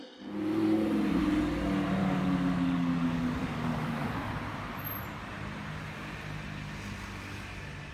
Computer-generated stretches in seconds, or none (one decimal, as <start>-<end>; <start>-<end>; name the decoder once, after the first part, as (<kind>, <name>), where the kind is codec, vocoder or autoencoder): 2.0-4.3 (codec, DAC)